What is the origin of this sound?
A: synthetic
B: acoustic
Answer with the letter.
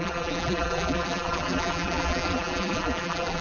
A